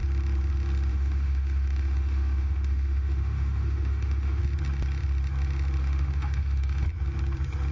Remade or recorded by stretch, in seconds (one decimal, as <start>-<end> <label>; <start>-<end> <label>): 0.0-0.9 recorded; 0.9-4.4 remade; 4.4-5.8 recorded; 5.8-6.8 remade; 6.8-7.7 recorded